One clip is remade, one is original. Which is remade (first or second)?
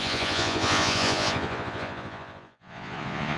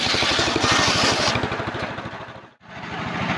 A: first